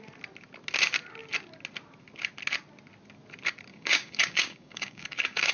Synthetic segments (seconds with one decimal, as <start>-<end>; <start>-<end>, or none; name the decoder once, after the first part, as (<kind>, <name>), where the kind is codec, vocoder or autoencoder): 3.7-5.5 (codec, DAC)